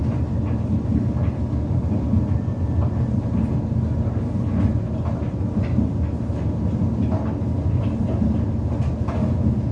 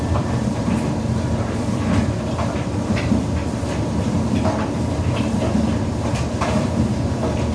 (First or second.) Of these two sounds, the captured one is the first